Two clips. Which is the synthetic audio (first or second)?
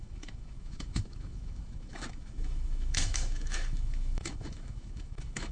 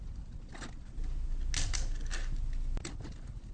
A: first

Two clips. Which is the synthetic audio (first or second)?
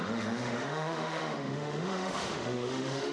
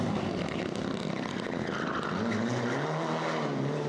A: first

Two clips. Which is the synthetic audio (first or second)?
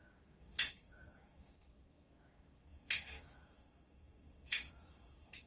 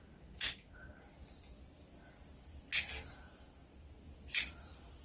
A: first